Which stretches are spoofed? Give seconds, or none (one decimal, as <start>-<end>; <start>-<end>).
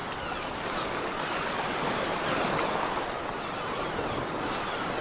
none